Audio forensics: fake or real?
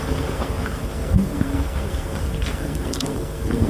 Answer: fake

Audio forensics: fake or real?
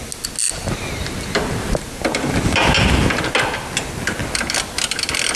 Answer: real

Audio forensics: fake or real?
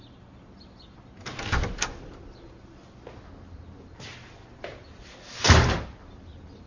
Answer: real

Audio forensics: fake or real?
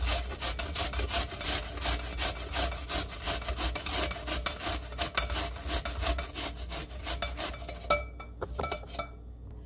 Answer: real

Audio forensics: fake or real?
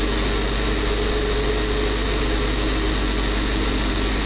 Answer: real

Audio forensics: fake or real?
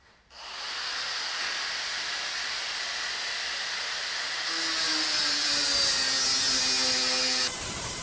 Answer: real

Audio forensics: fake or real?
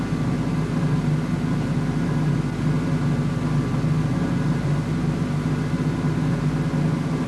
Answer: real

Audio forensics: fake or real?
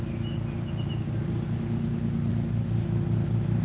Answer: real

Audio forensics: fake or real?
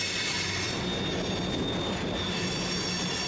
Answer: real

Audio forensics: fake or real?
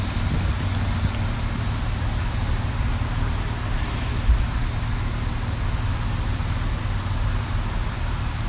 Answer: real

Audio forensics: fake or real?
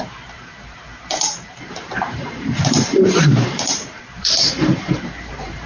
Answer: fake